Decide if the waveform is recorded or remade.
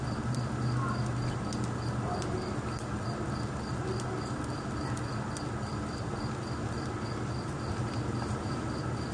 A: recorded